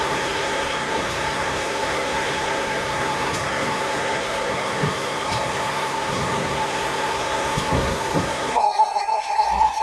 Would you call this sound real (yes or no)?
no